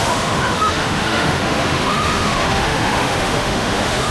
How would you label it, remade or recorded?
remade